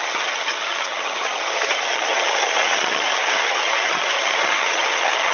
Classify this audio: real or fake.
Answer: fake